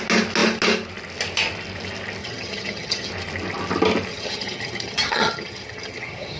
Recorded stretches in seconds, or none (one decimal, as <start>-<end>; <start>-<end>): 0.0-2.2; 3.1-4.1